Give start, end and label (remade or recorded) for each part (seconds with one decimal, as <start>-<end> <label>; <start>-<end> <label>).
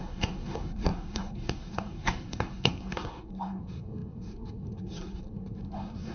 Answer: 0.0-6.1 remade